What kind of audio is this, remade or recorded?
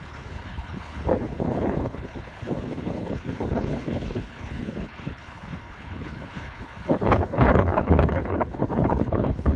remade